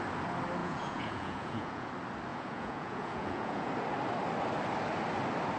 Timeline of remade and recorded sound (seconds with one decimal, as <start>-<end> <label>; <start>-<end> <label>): 0.0-0.6 recorded; 0.6-1.9 remade; 1.9-2.3 recorded; 2.3-3.7 remade; 3.7-5.6 recorded